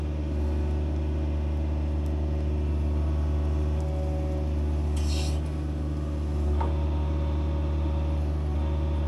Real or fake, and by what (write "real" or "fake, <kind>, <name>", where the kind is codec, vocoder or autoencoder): real